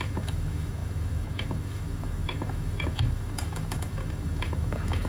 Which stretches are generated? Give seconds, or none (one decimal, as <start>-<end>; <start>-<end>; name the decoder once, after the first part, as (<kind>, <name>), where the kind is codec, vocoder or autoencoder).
0.0-5.1 (autoencoder, DAC-VAE)